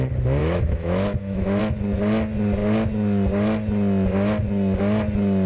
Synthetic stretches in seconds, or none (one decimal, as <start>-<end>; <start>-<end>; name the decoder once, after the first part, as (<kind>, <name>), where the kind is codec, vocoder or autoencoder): 0.4-1.6 (autoencoder, DAC-VAE)